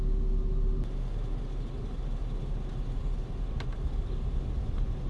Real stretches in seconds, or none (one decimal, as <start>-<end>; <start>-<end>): 0.0-5.1